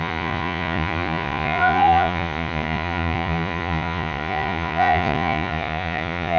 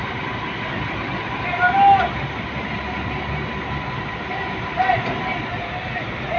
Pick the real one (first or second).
second